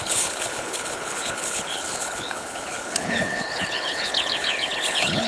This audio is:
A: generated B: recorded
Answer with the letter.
A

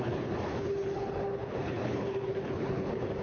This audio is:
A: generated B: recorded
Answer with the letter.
A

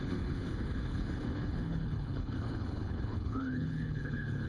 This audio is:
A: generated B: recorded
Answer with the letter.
A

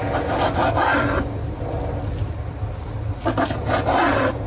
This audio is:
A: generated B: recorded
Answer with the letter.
B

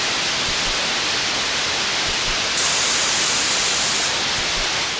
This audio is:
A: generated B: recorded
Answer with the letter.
B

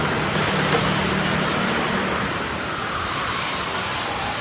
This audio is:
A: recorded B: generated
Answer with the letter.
A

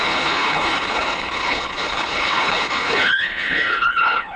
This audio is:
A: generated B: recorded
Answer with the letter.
A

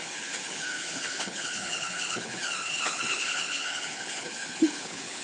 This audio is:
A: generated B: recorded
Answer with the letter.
A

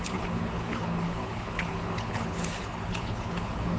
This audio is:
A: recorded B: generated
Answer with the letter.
B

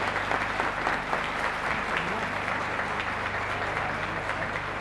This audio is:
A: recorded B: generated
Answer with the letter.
A